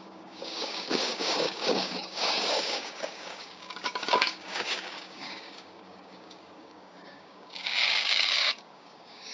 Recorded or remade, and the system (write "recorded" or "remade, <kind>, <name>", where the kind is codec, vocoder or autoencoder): remade, codec, DAC